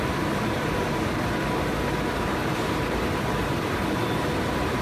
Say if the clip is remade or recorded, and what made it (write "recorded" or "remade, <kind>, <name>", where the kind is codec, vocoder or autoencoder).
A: remade, vocoder, BigVGAN v2